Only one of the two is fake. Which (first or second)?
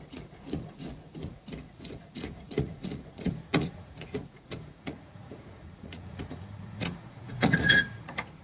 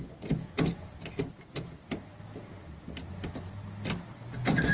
first